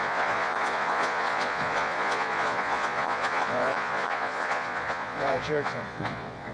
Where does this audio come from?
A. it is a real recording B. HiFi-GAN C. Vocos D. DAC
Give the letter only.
C